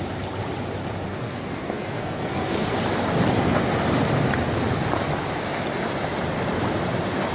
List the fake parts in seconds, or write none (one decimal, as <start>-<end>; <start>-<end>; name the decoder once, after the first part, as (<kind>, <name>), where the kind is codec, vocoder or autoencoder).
1.1-2.7 (codec, SNAC)